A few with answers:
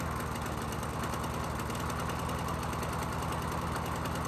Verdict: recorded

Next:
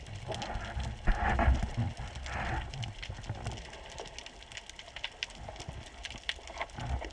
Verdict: recorded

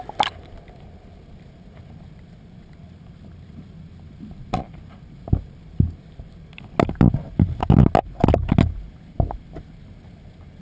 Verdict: recorded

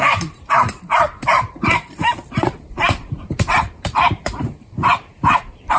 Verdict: remade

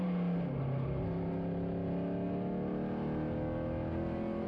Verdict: recorded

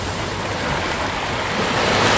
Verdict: recorded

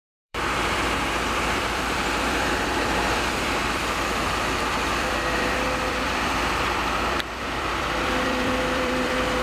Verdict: remade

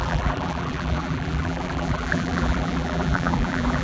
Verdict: remade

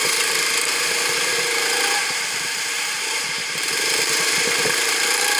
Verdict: remade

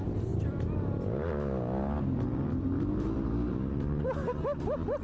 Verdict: remade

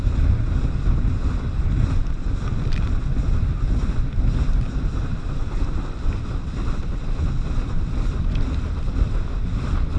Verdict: recorded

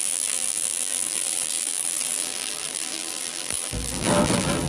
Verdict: remade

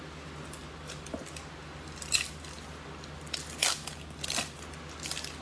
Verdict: recorded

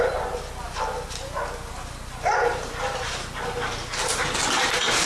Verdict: recorded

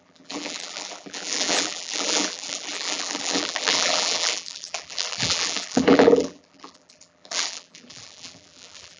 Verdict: remade